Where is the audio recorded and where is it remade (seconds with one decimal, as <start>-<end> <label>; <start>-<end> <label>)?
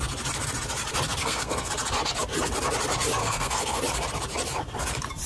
0.0-1.2 recorded; 1.2-1.7 remade; 1.7-3.2 recorded; 3.2-3.8 remade; 3.8-5.3 recorded